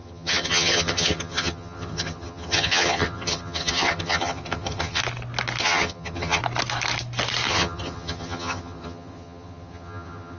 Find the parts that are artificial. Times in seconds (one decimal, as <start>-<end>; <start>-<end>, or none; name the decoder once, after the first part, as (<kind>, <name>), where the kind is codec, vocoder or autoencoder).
0.0-5.0 (vocoder, HiFi-GAN); 5.6-6.4; 7.5-10.4